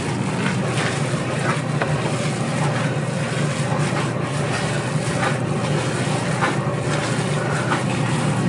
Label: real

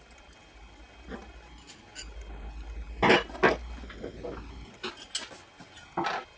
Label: real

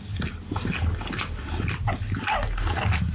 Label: real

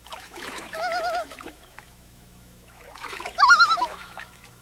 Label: fake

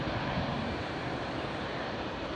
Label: fake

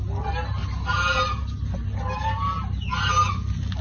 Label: real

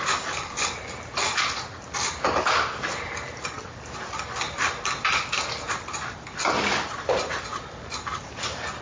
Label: real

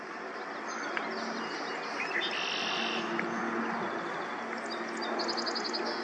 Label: real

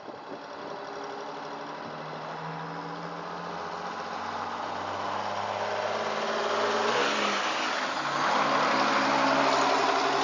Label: real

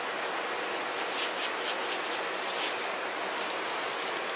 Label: real